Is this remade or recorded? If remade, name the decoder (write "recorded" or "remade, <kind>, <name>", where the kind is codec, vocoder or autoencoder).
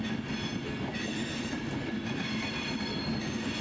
recorded